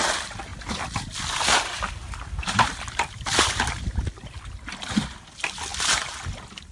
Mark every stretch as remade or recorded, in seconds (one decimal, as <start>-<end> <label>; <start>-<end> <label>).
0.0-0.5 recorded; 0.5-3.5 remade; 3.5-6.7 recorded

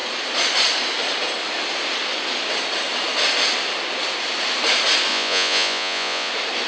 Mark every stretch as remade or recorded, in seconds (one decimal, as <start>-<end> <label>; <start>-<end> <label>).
0.0-5.1 recorded; 5.1-6.3 remade; 6.3-6.7 recorded

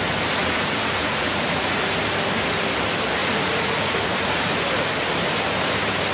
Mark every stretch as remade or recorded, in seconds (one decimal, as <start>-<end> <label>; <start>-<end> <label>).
0.0-0.4 recorded; 0.4-1.9 remade; 1.9-3.2 recorded; 3.2-4.6 remade; 4.6-6.1 recorded

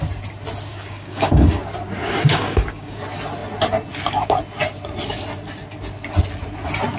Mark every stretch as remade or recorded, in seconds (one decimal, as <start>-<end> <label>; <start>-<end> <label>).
0.0-0.7 recorded; 0.7-1.6 remade; 1.6-2.0 recorded; 2.0-3.0 remade; 3.0-7.0 recorded